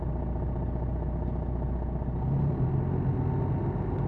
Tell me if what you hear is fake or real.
real